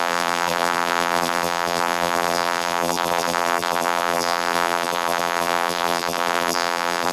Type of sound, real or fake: fake